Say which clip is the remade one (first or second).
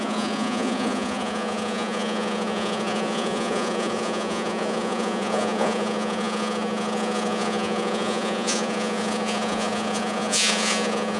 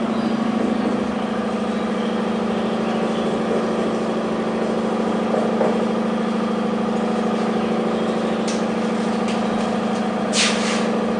first